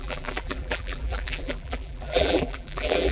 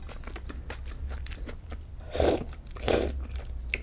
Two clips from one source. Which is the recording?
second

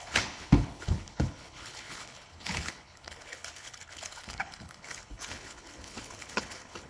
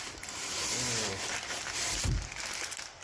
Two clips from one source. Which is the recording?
second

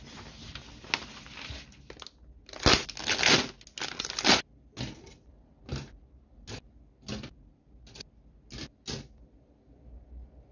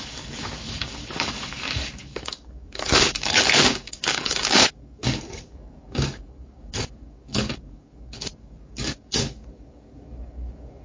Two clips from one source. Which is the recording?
first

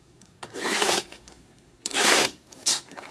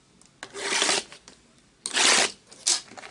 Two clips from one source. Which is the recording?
second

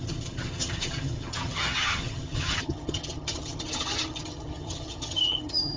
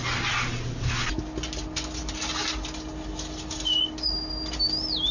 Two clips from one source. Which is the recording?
second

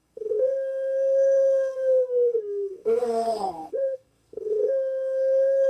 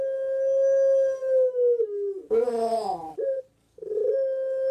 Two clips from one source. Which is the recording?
second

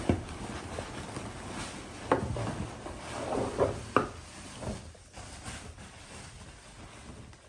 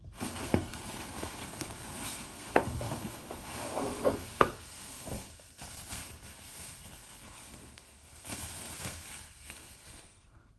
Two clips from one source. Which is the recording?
first